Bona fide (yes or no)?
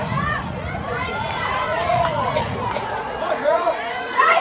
no